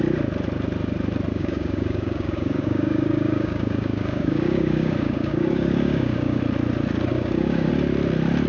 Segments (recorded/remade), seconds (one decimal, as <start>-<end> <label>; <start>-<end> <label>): 0.0-1.3 recorded; 1.3-6.4 remade; 6.4-7.1 recorded; 7.1-7.7 remade; 7.7-8.5 recorded